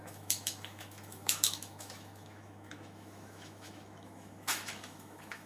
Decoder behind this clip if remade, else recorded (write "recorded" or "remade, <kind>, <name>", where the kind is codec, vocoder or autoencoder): remade, autoencoder, DAC-VAE